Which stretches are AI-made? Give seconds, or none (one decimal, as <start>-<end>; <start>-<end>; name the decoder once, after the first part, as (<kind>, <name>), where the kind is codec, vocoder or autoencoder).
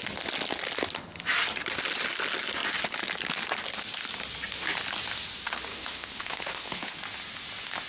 5.7-7.0 (codec, HILCodec)